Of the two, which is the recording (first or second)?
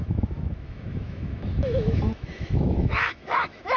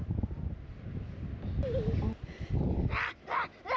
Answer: second